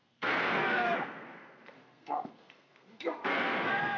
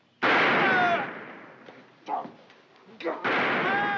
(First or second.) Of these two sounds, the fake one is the first